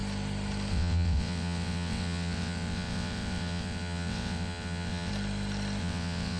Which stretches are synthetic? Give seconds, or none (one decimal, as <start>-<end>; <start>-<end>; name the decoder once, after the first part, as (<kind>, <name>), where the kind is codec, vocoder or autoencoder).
0.7-5.1 (vocoder, WaveNeXt); 5.8-6.4